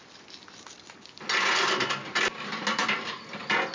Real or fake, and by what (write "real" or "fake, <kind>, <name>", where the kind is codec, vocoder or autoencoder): real